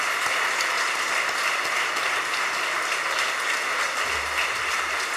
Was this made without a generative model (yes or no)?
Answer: yes